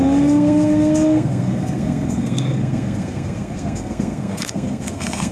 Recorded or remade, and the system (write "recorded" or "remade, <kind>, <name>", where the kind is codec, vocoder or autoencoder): remade, codec, SNAC